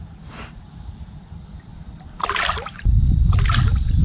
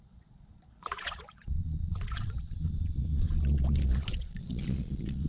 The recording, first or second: first